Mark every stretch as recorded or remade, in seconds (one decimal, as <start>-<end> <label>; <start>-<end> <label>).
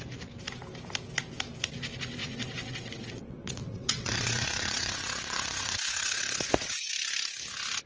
0.0-2.2 recorded; 2.2-6.9 remade; 6.9-7.9 recorded